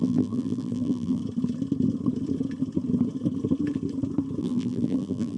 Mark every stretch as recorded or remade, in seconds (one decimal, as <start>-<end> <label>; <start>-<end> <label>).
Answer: 0.0-1.2 remade; 1.2-4.4 recorded; 4.4-5.4 remade